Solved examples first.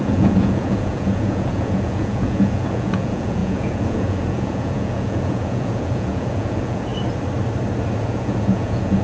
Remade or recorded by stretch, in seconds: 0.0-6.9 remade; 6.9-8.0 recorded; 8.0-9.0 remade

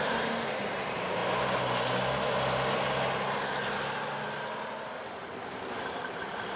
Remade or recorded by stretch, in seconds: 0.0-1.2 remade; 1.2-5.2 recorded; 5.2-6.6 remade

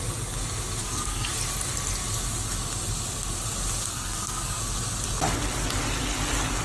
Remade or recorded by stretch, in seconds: 0.0-0.8 recorded; 0.8-1.3 remade; 1.3-3.9 recorded; 3.9-4.6 remade; 4.6-6.6 recorded